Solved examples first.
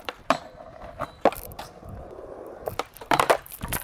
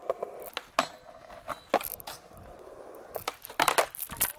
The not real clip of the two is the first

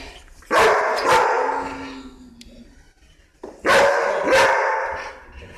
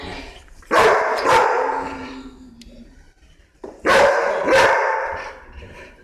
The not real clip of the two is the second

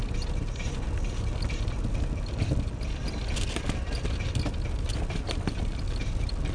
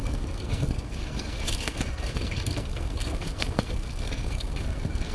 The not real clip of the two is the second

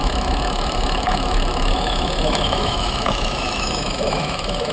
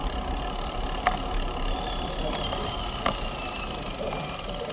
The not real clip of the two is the first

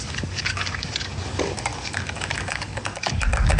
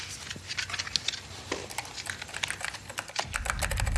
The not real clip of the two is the first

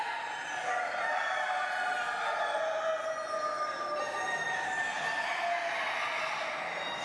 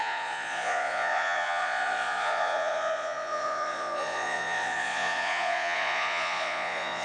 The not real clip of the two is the second